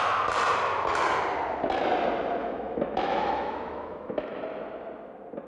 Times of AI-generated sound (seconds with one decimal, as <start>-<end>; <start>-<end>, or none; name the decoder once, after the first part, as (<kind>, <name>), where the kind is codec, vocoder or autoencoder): 2.4-4.4 (autoencoder, DAC-VAE)